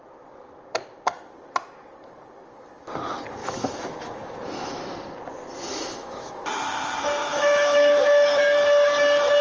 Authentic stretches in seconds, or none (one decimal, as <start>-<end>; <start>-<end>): 0.0-3.4; 4.8-5.7; 6.4-7.2; 8.4-9.4